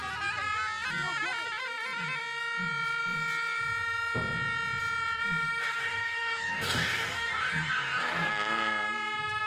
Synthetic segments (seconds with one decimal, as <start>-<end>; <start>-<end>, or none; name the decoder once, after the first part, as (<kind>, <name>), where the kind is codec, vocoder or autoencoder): 5.6-8.3 (codec, DAC)